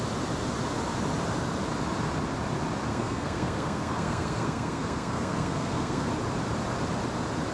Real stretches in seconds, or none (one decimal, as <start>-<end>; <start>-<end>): 0.0-2.9; 6.1-7.5